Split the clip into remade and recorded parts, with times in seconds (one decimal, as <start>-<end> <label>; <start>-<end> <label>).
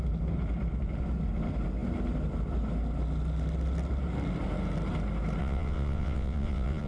0.0-5.4 recorded; 5.4-6.9 remade